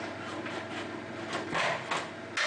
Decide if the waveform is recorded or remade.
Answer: recorded